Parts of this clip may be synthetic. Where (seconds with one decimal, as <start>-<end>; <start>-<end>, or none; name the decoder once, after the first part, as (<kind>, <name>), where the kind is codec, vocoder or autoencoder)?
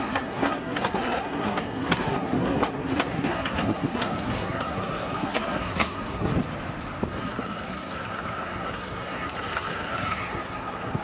0.0-6.3 (codec, SNAC); 7.1-11.0